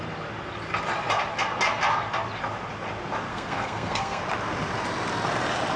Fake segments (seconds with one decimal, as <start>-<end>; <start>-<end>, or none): 3.3-4.2